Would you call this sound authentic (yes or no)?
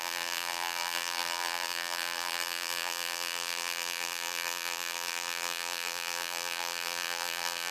no